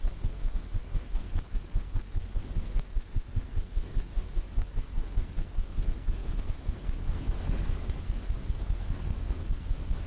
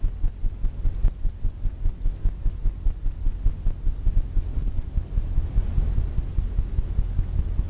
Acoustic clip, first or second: second